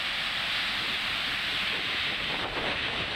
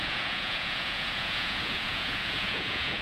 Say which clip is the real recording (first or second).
first